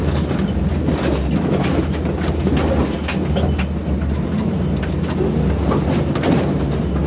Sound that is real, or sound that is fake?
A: real